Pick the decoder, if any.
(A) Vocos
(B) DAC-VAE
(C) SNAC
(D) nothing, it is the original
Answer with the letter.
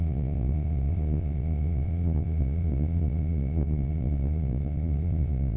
A